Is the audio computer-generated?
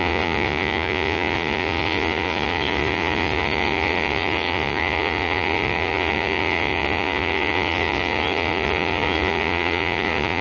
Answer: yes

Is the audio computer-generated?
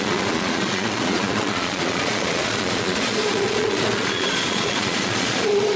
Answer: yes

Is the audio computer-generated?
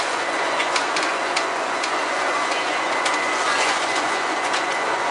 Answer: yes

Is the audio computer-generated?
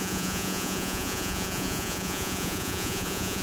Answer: yes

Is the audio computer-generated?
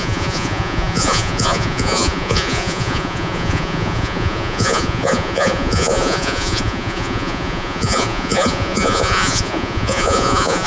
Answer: yes